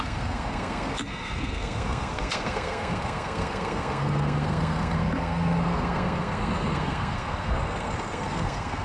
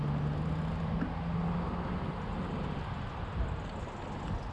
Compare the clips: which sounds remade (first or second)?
first